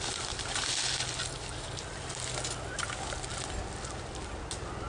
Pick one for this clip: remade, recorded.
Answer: recorded